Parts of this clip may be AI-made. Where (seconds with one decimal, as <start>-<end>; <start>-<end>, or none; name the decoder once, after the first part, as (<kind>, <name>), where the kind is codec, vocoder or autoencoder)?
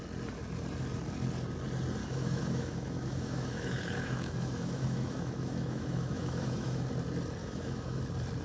2.0-6.9 (autoencoder, DAC-VAE); 7.4-8.0